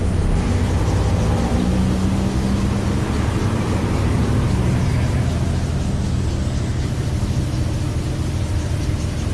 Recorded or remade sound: recorded